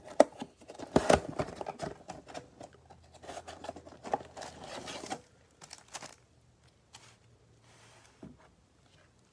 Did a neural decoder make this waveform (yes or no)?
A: no